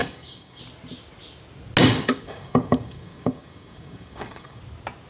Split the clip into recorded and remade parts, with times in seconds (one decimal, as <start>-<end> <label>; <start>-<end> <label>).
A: 0.0-0.6 remade; 0.6-1.8 recorded; 1.8-4.6 remade; 4.6-5.1 recorded